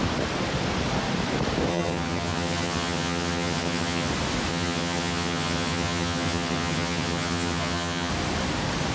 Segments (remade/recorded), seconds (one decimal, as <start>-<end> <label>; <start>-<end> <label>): 0.0-1.7 recorded; 1.7-4.1 remade; 4.1-4.5 recorded; 4.5-8.1 remade; 8.1-8.9 recorded